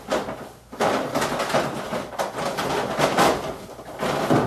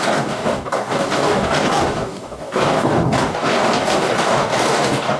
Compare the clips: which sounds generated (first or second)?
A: second